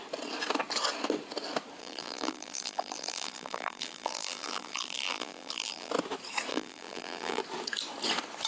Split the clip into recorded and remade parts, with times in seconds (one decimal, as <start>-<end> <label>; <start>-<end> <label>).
0.0-1.8 recorded; 1.8-5.9 remade; 5.9-6.5 recorded; 6.5-7.4 remade; 7.4-8.5 recorded